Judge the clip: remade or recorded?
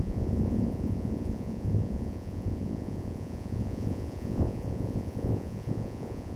remade